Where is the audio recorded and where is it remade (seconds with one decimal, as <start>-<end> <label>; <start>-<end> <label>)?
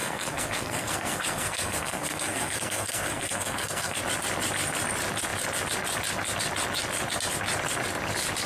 0.0-4.0 remade; 4.0-8.5 recorded